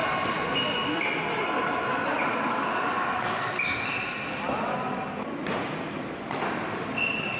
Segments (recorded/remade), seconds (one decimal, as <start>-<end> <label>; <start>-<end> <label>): 0.0-1.9 recorded; 1.9-7.4 remade

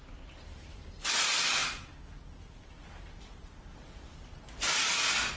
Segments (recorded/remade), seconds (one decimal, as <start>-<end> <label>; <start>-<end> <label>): 0.0-5.4 recorded